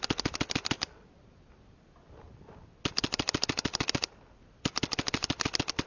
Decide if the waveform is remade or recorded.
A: recorded